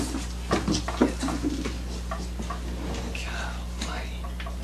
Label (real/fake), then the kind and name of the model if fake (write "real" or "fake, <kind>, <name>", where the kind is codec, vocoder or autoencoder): real